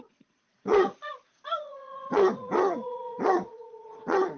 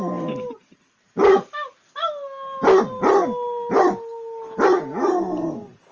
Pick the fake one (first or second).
first